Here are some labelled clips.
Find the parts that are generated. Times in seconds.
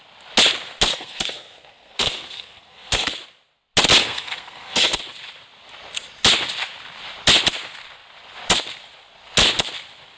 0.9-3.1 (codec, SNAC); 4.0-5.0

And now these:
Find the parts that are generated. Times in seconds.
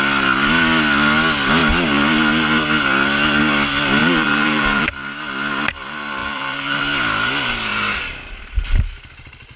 4.0-4.9 (vocoder, BigVGAN v2); 6.2-6.8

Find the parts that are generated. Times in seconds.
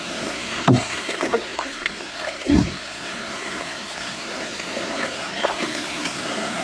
0.0-6.6 (codec, SNAC)